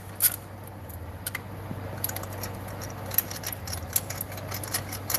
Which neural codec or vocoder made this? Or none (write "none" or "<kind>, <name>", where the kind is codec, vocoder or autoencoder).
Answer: none